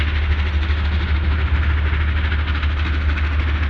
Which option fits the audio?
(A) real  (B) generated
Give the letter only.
A